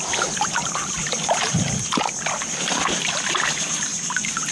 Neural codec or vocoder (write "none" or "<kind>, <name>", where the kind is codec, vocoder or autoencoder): none